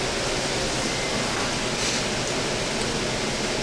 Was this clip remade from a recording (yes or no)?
no